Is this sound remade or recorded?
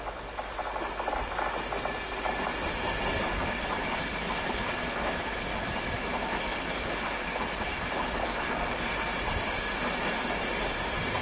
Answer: recorded